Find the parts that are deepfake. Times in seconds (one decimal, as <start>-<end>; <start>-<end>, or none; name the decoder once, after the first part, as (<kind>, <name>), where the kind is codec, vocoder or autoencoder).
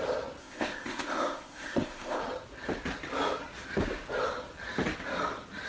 0.4-2.2 (codec, ZipCodec)